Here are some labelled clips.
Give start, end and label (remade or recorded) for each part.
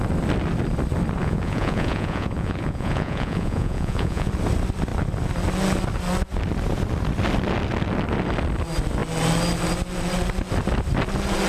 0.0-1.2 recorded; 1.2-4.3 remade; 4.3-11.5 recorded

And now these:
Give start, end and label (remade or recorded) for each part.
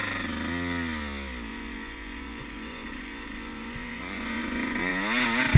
0.0-1.5 recorded; 1.5-4.9 remade; 4.9-5.6 recorded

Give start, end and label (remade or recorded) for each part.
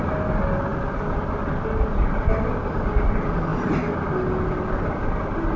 0.0-5.6 recorded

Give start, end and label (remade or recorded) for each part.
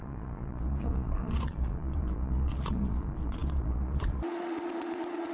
0.0-5.3 remade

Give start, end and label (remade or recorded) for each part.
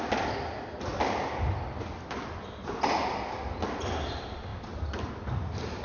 0.0-5.8 recorded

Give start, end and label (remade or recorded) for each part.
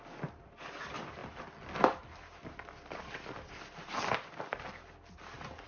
0.0-5.7 recorded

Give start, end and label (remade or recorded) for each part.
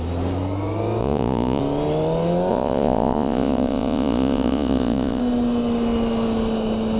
0.0-1.0 recorded; 1.0-1.6 remade; 1.6-2.5 recorded; 2.5-5.2 remade; 5.2-7.0 recorded